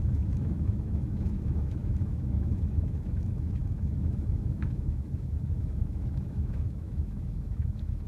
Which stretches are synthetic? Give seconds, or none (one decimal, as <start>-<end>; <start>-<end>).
0.0-8.1